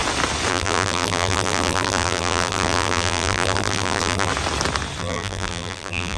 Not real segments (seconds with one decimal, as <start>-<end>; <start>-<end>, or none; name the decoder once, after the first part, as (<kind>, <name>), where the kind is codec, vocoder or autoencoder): 0.5-4.3 (vocoder, BigVGAN v2); 5.0-6.2

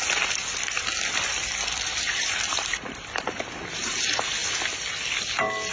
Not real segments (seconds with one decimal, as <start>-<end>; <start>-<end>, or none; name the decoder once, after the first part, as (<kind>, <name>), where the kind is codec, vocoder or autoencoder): 0.5-3.9 (vocoder, BigVGAN v2)

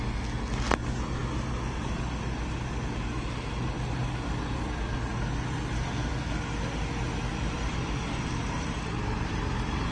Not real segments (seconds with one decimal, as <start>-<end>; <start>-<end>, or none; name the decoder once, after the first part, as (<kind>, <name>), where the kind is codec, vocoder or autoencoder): 7.3-9.9 (vocoder, BigVGAN v2)

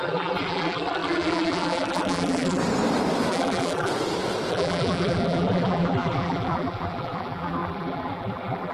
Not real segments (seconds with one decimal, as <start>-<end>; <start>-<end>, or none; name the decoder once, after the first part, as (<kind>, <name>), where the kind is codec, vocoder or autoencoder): 0.0-2.6 (vocoder, BigVGAN v2); 3.3-3.9; 4.5-8.7

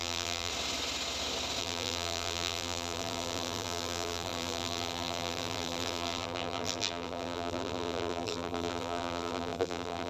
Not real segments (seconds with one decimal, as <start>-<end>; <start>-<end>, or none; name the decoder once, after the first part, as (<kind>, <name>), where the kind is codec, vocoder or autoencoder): 0.0-0.5 (vocoder, BigVGAN v2); 1.6-10.1